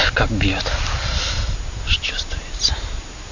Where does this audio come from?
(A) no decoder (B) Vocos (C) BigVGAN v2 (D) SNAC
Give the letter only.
A